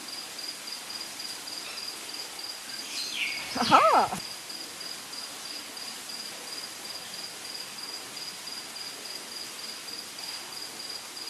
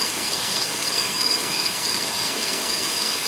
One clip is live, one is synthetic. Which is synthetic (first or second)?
second